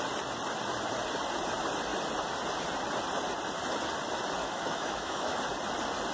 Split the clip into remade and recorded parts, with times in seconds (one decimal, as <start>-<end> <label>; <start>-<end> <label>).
0.0-4.4 recorded; 4.4-5.4 remade; 5.4-6.1 recorded